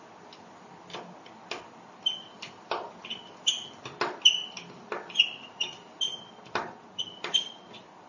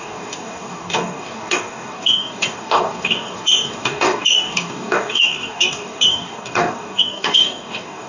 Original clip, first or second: first